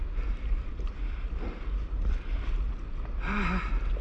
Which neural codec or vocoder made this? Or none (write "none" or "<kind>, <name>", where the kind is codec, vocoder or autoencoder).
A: none